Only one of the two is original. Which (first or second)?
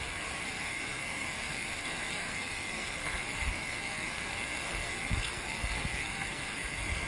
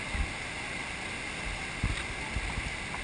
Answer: second